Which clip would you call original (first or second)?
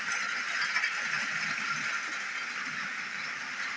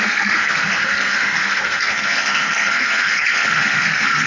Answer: first